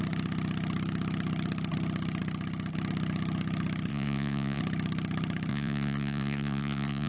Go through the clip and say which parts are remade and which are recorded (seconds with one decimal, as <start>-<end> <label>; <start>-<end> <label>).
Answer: 0.0-3.9 recorded; 3.9-4.6 remade; 4.6-5.5 recorded; 5.5-7.1 remade